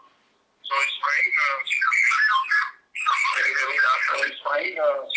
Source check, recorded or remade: recorded